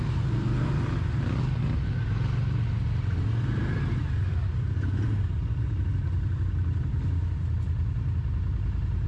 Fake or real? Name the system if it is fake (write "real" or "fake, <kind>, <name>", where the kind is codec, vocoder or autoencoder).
real